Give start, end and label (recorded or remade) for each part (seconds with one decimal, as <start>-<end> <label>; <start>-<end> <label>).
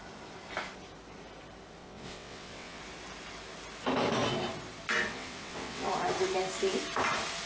0.0-1.8 recorded; 1.8-2.8 remade; 2.8-5.1 recorded; 5.1-5.9 remade; 5.9-7.5 recorded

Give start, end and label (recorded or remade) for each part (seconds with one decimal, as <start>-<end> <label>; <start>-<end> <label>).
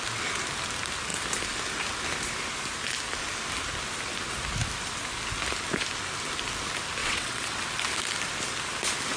0.0-7.0 recorded; 7.0-7.6 remade; 7.6-9.2 recorded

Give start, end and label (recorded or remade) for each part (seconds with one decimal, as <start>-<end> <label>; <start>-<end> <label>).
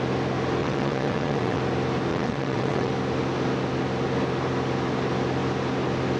0.0-0.6 recorded; 0.6-1.6 remade; 1.6-2.1 recorded; 2.1-2.9 remade; 2.9-6.2 recorded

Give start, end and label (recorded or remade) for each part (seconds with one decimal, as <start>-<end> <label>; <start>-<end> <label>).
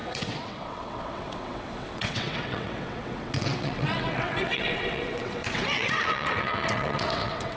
0.0-7.6 remade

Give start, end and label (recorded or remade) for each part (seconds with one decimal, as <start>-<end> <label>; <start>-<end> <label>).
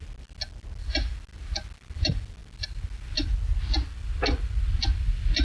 0.0-5.4 recorded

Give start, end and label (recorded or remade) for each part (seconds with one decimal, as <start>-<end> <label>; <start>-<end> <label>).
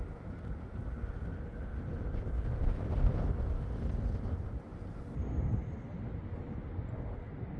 0.0-7.6 recorded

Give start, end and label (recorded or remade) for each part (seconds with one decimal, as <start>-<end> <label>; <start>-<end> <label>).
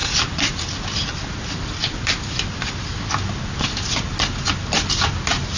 0.0-5.6 recorded